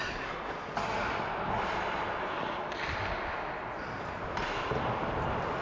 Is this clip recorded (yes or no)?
yes